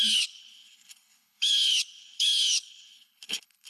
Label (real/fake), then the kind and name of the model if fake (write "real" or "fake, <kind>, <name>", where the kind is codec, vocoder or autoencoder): fake, codec, HILCodec